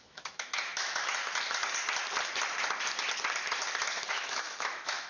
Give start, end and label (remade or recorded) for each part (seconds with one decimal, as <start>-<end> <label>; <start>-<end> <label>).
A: 0.0-1.2 remade; 1.2-4.1 recorded; 4.1-5.1 remade